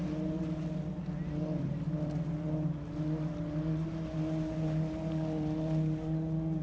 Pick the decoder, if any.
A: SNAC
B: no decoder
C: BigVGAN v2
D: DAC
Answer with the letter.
B